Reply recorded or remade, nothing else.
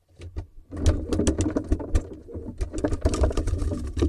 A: recorded